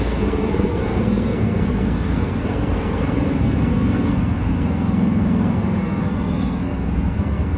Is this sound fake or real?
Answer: fake